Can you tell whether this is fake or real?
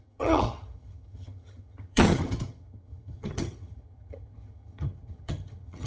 fake